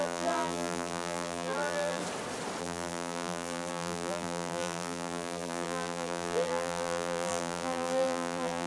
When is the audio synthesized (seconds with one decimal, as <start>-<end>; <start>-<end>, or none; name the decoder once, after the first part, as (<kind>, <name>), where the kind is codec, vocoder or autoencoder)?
0.0-2.0 (vocoder, BigVGAN v2); 2.6-8.7